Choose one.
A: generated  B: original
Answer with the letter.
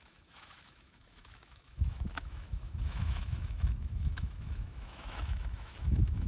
A